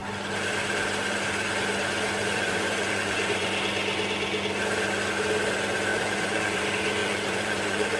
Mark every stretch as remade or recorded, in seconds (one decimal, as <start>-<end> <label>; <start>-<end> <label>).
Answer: 0.0-2.2 recorded; 2.2-3.5 remade; 3.5-5.9 recorded; 5.9-6.6 remade; 6.6-7.0 recorded; 7.0-8.0 remade

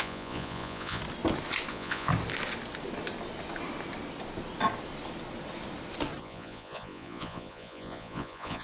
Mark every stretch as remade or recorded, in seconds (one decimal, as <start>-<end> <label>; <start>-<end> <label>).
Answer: 0.0-1.0 remade; 1.0-1.7 recorded; 1.7-2.1 remade; 2.1-6.2 recorded; 6.2-8.6 remade